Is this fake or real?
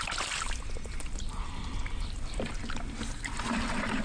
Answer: real